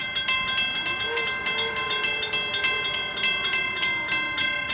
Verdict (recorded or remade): recorded